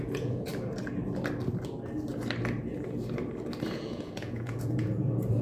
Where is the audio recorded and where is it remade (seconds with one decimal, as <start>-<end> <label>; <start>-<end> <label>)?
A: 0.0-0.5 remade; 0.5-3.7 recorded; 3.7-5.4 remade